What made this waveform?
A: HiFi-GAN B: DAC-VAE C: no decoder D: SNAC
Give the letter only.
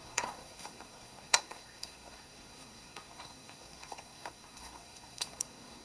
D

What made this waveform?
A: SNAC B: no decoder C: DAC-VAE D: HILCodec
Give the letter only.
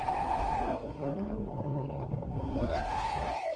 A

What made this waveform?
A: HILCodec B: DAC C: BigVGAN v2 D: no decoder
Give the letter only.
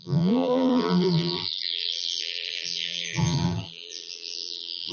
C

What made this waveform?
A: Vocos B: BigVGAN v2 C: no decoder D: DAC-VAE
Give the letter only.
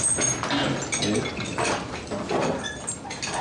C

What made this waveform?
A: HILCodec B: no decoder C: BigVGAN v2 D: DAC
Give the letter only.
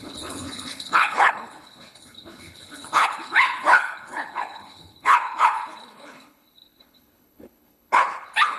A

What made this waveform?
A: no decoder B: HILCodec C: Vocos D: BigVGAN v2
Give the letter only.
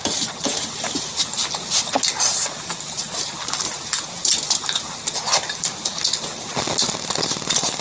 A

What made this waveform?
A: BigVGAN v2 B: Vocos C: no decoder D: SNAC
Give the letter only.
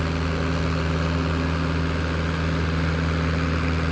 C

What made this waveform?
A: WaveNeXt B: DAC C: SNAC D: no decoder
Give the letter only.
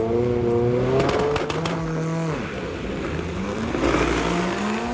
D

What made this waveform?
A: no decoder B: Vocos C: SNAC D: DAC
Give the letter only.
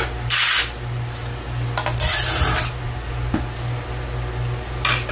A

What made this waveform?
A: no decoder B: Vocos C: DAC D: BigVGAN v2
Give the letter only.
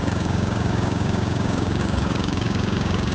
C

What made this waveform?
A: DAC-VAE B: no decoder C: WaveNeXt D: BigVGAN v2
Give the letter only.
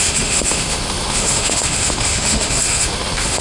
A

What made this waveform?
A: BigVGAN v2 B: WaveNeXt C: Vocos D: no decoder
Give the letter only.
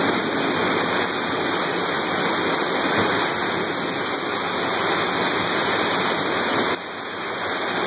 D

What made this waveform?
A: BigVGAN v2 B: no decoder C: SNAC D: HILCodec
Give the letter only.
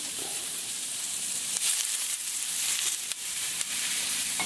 A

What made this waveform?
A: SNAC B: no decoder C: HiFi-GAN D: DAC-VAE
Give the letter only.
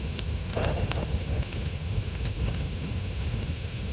D